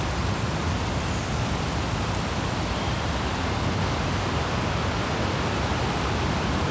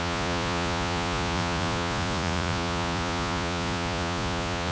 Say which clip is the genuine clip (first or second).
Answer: first